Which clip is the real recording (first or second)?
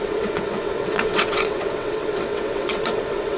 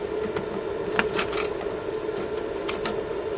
second